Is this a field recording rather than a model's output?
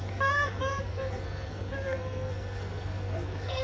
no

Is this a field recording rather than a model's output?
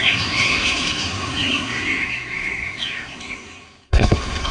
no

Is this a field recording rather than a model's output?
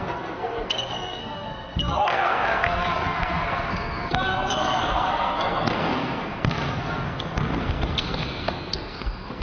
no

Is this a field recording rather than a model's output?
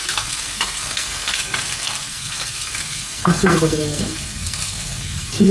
no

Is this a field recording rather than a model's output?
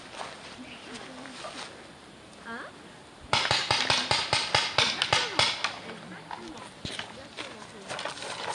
yes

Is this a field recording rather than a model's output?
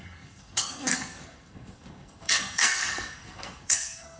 no